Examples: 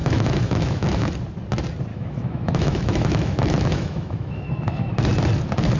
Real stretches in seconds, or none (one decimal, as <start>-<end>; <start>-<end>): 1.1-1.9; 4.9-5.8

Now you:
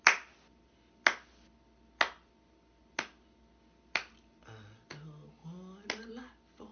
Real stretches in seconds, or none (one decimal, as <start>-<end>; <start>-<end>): 0.0-6.7

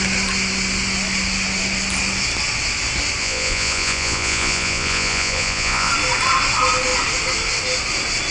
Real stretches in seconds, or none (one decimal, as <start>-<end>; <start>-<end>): 0.0-3.2; 5.9-8.3

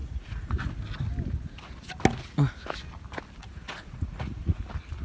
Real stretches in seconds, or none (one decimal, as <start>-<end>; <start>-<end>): 0.5-3.4; 4.6-5.0

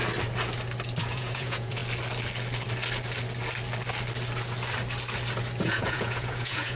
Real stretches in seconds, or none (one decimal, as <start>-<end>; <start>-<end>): 0.0-1.0; 1.8-5.6

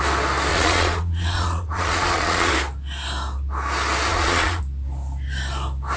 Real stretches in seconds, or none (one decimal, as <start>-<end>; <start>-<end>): 0.0-0.5; 2.5-4.1; 4.6-6.0

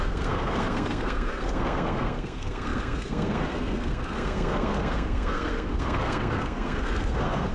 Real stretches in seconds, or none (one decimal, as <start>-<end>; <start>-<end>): none

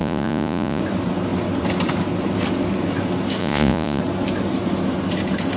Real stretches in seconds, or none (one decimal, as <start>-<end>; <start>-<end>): 0.8-3.4; 4.0-5.6